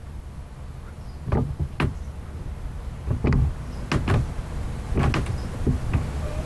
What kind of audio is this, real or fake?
real